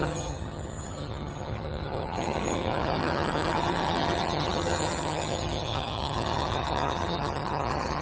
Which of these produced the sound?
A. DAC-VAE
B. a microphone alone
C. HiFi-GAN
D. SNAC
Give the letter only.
C